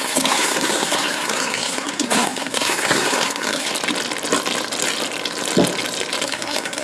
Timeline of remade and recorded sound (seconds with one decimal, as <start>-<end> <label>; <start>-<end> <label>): 0.0-3.7 remade; 3.7-6.2 recorded; 6.2-6.8 remade